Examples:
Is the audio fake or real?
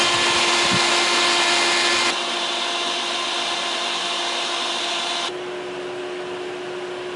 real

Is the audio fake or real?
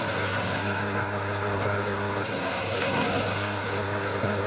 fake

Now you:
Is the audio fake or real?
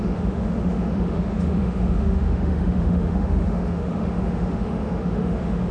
fake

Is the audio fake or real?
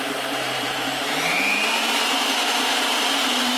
fake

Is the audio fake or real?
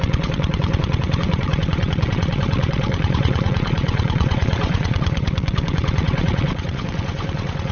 fake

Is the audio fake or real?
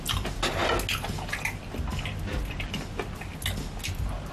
real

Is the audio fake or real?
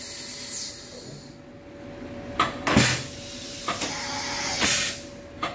real